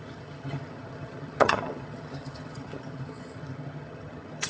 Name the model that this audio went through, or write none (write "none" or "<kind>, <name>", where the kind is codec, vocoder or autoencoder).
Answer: vocoder, HiFi-GAN